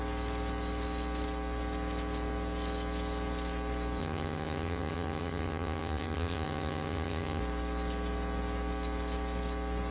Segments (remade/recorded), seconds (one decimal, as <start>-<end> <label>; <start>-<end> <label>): 0.0-4.0 recorded; 4.0-7.4 remade; 7.4-9.9 recorded

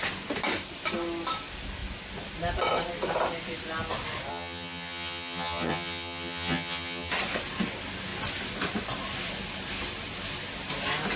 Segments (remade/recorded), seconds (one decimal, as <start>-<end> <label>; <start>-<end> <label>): 0.0-4.3 recorded; 4.3-7.1 remade; 7.1-11.2 recorded

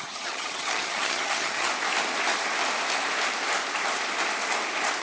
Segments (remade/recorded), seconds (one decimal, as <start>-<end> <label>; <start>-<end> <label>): 0.0-1.7 remade; 1.7-5.0 recorded

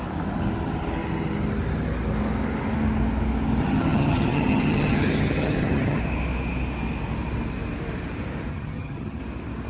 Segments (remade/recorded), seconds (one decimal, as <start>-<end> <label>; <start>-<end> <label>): 0.0-3.6 recorded; 3.6-6.0 remade; 6.0-8.5 recorded; 8.5-9.2 remade; 9.2-9.7 recorded

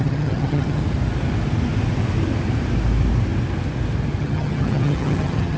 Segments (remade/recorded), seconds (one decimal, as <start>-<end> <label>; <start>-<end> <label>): 0.0-0.8 remade; 0.8-4.2 recorded; 4.2-5.6 remade

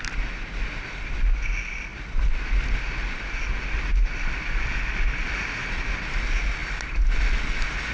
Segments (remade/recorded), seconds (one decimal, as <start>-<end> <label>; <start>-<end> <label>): 0.0-7.9 recorded

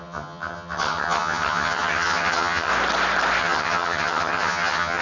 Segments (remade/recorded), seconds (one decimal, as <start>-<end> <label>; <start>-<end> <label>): 0.0-2.7 remade; 2.7-3.4 recorded; 3.4-5.0 remade

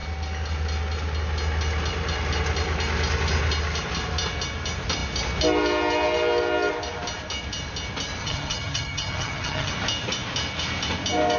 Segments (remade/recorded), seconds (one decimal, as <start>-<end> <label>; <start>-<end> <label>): 0.0-8.2 recorded; 8.2-9.7 remade; 9.7-11.4 recorded